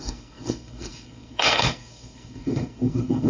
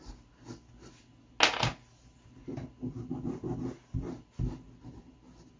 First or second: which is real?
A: second